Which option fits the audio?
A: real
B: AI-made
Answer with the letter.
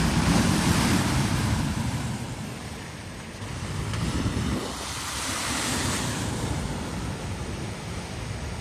B